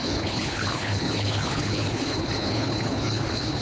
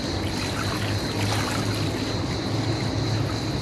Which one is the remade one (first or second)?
first